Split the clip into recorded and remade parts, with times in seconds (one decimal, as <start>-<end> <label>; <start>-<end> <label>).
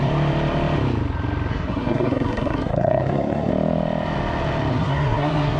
0.0-1.5 recorded; 1.5-3.5 remade; 3.5-4.7 recorded; 4.7-5.6 remade